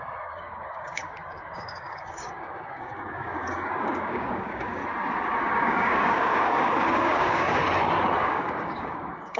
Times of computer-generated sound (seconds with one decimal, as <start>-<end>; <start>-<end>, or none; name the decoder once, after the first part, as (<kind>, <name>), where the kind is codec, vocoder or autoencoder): 0.0-4.8 (codec, DAC); 5.6-7.6; 8.2-9.4